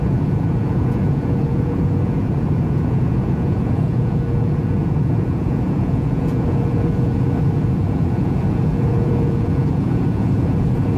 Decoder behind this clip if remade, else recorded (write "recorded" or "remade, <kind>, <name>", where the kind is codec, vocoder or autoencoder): remade, vocoder, Vocos